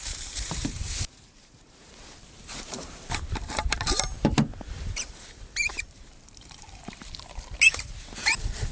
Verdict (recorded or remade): remade